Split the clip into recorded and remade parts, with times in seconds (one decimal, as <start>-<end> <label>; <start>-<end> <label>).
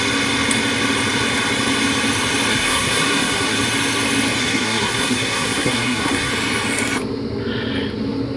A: 0.0-2.5 recorded; 2.5-3.6 remade; 3.6-4.4 recorded; 4.4-6.3 remade; 6.3-8.4 recorded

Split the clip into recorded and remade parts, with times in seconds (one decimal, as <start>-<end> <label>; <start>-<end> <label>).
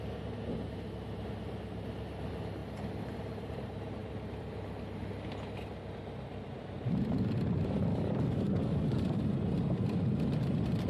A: 0.0-7.9 recorded; 7.9-9.2 remade; 9.2-10.9 recorded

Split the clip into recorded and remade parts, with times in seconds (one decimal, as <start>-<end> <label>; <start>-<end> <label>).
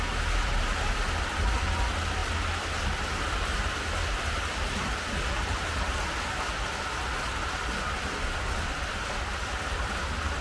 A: 0.0-10.4 recorded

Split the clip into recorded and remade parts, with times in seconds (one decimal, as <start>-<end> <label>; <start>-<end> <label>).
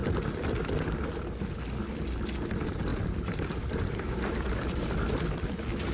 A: 0.0-2.9 recorded; 2.9-4.8 remade; 4.8-5.9 recorded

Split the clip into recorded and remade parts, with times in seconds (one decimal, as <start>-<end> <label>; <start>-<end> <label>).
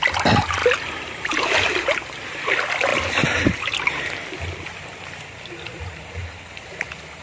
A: 0.0-6.2 recorded; 6.2-6.7 remade; 6.7-7.2 recorded